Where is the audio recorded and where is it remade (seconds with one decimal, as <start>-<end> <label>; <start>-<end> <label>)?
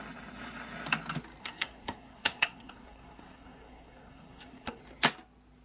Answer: 0.0-1.4 recorded; 1.4-4.8 remade; 4.8-5.6 recorded